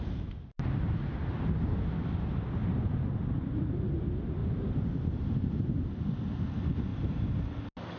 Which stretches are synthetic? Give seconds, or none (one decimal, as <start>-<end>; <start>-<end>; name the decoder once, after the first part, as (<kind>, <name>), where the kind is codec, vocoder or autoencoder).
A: 2.6-3.2 (vocoder, BigVGAN v2); 4.4-6.1; 6.9-7.5